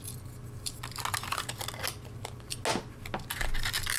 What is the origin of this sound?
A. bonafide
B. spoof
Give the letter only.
A